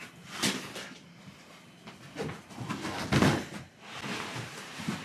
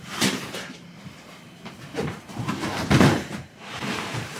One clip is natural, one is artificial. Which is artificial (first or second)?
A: second